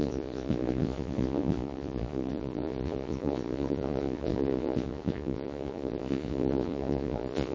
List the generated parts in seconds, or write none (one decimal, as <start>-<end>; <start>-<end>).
0.0-7.5